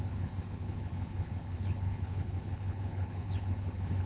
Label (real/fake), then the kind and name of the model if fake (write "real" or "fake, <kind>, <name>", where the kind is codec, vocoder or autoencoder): fake, codec, HILCodec